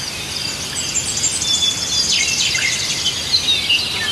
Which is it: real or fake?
real